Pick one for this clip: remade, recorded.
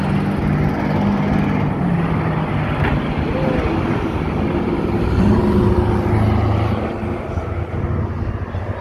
recorded